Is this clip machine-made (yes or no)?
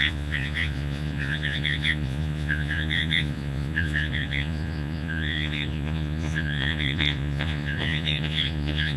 yes